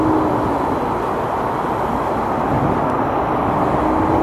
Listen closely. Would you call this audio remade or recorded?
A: recorded